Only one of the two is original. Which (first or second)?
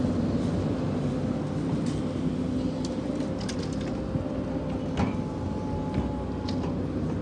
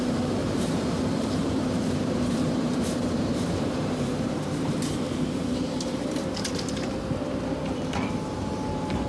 first